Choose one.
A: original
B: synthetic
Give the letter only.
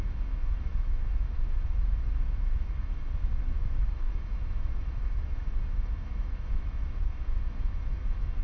B